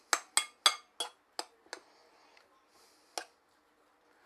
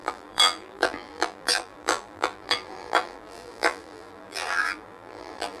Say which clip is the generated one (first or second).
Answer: second